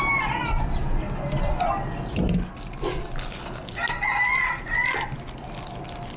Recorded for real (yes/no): yes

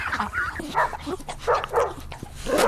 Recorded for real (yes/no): yes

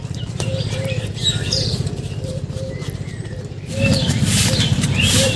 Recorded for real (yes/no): no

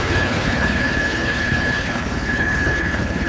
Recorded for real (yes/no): no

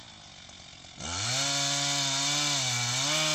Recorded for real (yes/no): yes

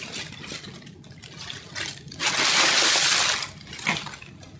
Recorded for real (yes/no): yes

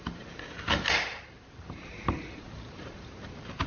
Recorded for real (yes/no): no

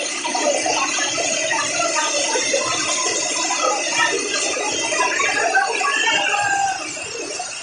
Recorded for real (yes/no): yes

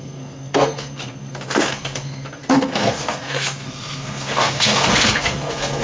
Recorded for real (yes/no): no